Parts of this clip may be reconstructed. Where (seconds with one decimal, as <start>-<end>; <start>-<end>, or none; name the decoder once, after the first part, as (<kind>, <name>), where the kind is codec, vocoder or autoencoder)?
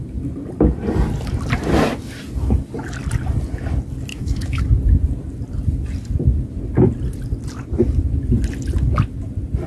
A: 4.1-4.6 (autoencoder, DAC-VAE)